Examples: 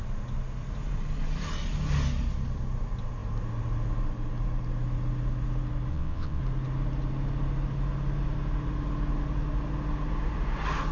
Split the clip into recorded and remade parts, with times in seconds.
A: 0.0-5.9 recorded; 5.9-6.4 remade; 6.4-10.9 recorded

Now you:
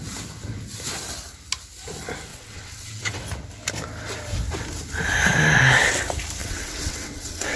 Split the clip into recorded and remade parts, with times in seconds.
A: 0.0-2.3 recorded; 2.3-3.2 remade; 3.2-6.4 recorded; 6.4-7.6 remade